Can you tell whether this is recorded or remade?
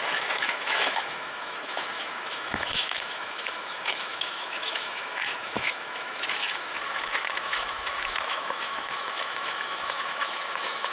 remade